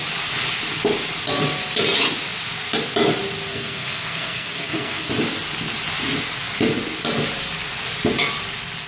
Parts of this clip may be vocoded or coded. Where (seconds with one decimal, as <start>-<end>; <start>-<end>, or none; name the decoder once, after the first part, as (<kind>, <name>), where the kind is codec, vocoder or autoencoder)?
3.5-5.1 (codec, SNAC)